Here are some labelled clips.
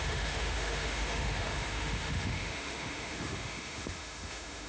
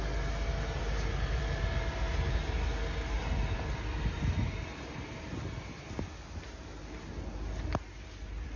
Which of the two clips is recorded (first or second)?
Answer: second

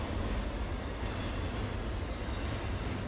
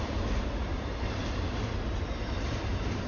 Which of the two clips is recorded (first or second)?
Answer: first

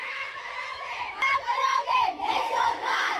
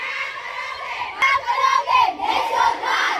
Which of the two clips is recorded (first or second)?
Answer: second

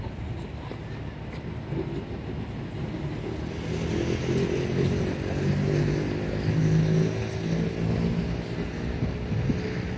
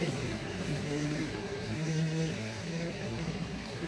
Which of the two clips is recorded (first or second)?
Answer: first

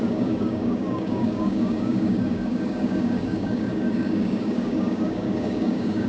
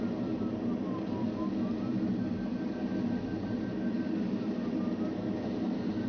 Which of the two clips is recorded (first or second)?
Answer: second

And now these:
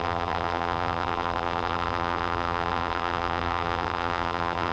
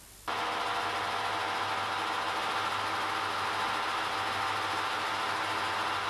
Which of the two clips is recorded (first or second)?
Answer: second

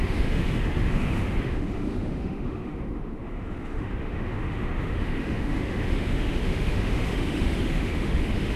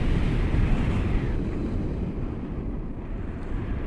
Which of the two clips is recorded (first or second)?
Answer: second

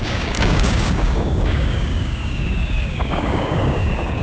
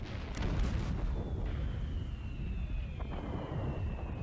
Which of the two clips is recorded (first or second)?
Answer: second